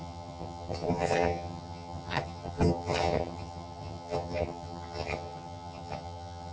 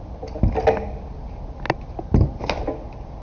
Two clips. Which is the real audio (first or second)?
second